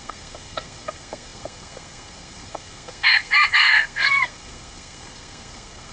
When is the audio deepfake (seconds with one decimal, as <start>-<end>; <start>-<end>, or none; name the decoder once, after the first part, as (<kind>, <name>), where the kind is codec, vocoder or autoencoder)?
0.0-5.9 (codec, SNAC)